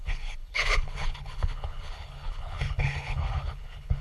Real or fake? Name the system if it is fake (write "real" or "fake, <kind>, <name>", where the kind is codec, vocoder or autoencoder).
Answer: fake, codec, HILCodec